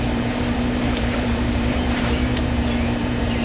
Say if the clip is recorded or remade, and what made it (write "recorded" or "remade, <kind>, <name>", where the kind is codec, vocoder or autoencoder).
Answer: remade, vocoder, BigVGAN v2